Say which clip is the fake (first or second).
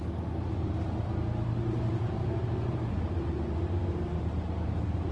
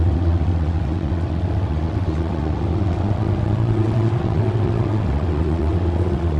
second